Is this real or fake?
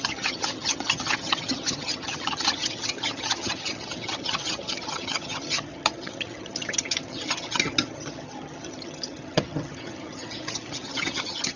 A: fake